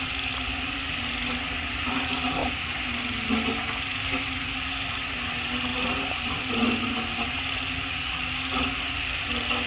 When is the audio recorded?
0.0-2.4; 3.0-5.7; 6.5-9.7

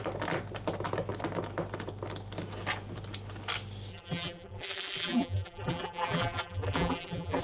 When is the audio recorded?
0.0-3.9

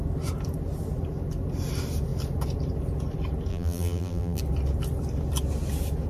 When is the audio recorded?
0.0-3.5; 4.4-6.1

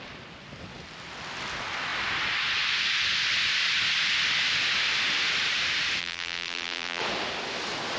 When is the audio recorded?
0.0-6.0; 7.0-8.0

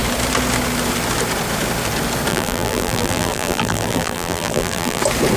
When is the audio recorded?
0.0-2.3; 5.0-5.4

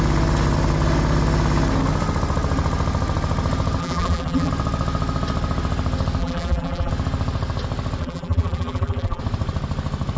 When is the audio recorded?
0.0-3.8; 4.5-6.2; 6.9-8.0; 9.2-10.2